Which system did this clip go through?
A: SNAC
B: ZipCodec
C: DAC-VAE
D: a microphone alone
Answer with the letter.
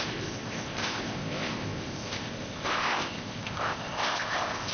B